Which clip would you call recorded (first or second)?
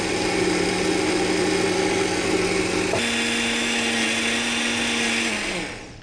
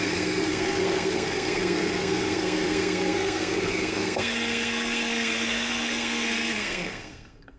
first